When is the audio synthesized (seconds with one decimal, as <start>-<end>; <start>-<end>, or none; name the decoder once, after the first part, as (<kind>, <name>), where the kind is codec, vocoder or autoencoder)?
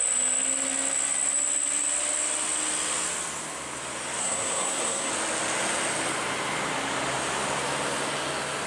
4.2-5.1 (codec, SNAC)